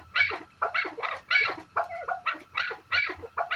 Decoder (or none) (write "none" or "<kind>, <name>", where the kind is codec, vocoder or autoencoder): none